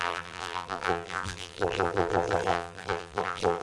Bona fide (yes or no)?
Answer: no